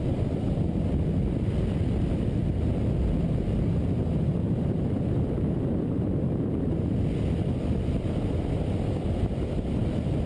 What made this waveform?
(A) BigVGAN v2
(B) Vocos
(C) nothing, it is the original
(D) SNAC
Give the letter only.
C